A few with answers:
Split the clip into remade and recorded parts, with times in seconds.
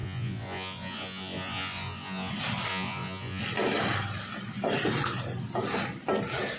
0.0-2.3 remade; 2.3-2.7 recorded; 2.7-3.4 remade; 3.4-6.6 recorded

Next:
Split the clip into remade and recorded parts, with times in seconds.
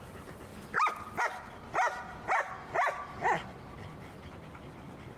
0.0-5.2 recorded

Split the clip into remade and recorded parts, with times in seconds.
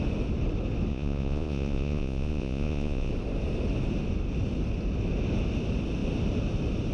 0.0-0.9 recorded; 0.9-3.1 remade; 3.1-6.9 recorded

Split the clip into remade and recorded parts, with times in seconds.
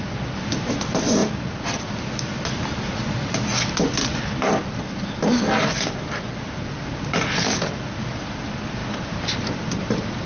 0.0-10.3 recorded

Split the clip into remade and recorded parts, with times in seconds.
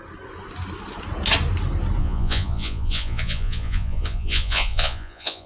0.0-2.0 recorded; 2.0-5.5 remade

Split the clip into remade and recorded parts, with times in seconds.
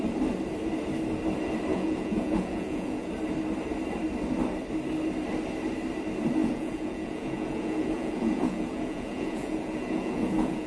0.0-1.7 recorded; 1.7-3.1 remade; 3.1-6.4 recorded; 6.4-10.7 remade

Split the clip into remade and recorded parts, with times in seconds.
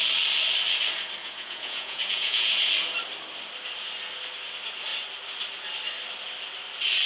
0.0-1.2 recorded; 1.2-2.7 remade; 2.7-7.1 recorded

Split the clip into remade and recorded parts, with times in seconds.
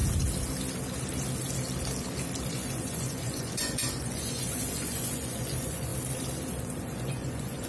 0.0-2.5 recorded; 2.5-5.9 remade; 5.9-6.6 recorded; 6.6-7.7 remade